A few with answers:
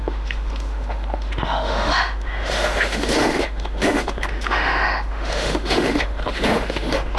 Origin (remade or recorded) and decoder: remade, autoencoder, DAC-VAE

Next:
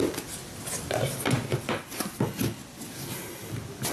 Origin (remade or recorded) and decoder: recorded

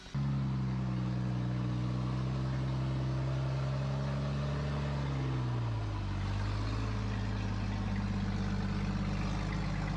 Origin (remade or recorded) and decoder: recorded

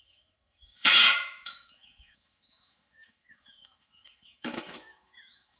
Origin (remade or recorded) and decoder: remade, autoencoder, DAC-VAE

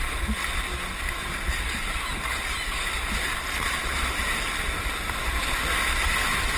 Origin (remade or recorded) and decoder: recorded